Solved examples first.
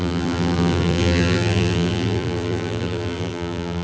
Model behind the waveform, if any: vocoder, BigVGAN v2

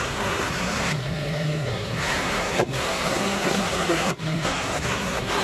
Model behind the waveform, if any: codec, SNAC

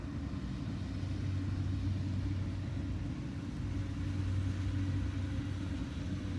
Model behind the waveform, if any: none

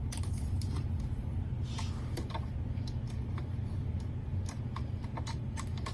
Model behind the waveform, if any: none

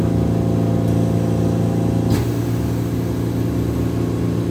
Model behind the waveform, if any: none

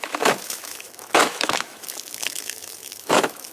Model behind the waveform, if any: autoencoder, DAC-VAE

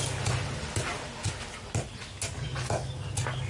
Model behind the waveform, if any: none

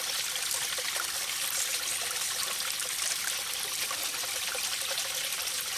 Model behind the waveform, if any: none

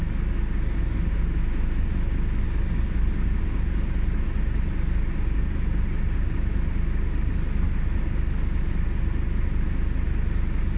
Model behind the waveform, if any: none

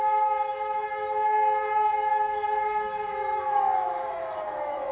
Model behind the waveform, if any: autoencoder, DAC-VAE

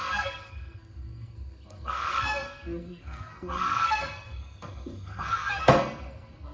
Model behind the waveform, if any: codec, SNAC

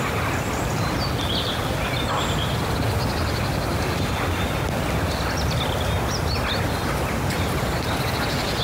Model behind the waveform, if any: none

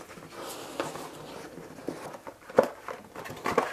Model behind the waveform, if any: none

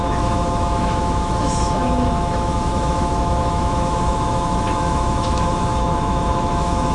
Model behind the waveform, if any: autoencoder, DAC-VAE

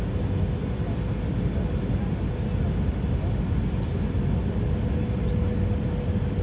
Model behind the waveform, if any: none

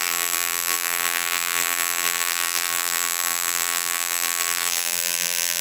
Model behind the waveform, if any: vocoder, BigVGAN v2